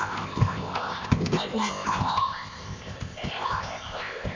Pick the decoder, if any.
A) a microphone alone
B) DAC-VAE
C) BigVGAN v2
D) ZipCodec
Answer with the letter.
D